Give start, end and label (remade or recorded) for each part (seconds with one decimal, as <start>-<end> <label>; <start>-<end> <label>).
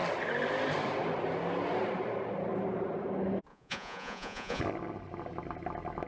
0.0-3.5 recorded; 3.5-4.6 remade; 4.6-6.1 recorded